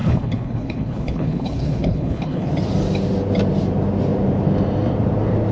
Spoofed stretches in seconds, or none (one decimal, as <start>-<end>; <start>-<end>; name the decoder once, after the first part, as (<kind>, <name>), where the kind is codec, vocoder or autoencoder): 0.0-2.5 (codec, HILCodec)